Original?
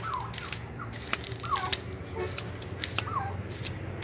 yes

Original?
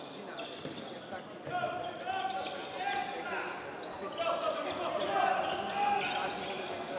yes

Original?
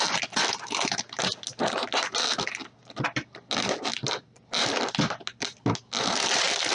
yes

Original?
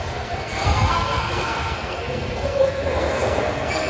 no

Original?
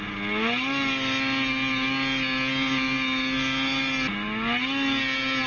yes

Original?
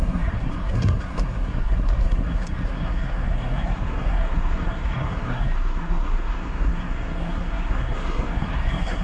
no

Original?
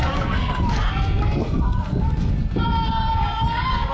no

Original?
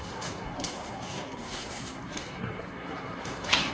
no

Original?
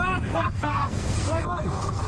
no